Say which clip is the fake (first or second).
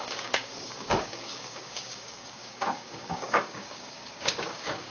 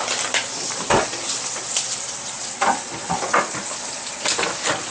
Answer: first